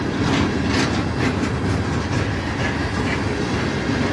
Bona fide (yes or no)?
yes